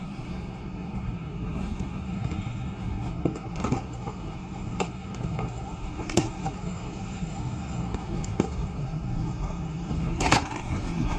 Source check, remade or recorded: remade